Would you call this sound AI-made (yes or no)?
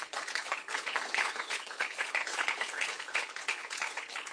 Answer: yes